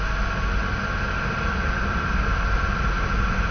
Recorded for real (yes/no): yes